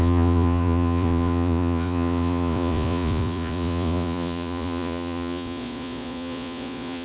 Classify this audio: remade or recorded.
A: remade